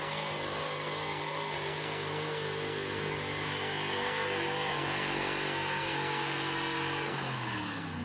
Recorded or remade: remade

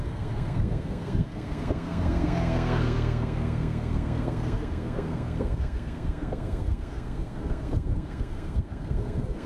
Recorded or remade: remade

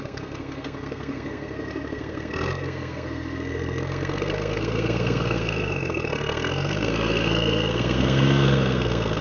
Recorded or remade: remade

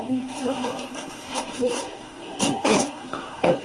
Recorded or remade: remade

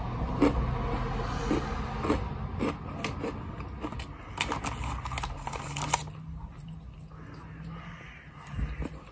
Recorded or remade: recorded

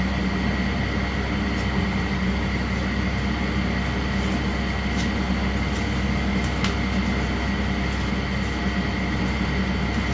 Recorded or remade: recorded